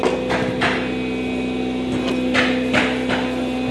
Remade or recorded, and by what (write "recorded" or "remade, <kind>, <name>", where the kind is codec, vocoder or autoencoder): recorded